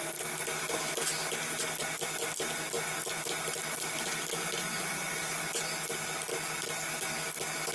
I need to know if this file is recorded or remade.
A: recorded